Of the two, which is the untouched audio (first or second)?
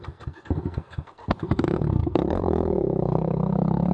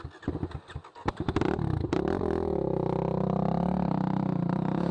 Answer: second